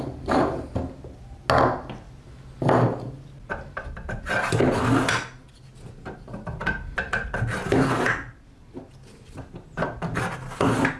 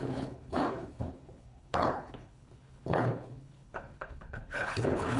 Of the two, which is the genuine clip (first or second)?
first